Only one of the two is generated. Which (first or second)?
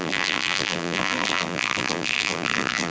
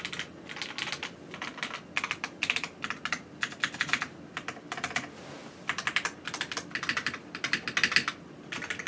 first